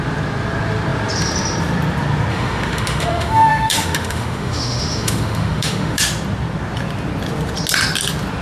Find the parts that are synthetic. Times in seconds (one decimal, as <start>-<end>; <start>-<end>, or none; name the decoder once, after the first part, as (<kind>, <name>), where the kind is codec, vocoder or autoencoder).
2.3-6.0 (autoencoder, DAC-VAE)